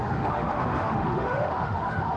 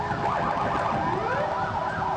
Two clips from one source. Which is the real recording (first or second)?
second